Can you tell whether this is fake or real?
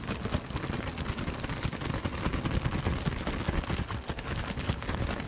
real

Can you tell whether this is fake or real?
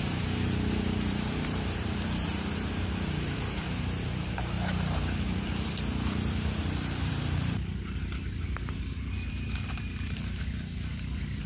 fake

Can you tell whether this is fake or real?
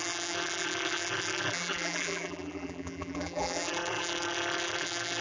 fake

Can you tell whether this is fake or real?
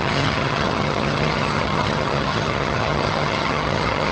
fake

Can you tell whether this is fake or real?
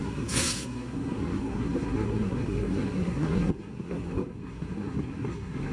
fake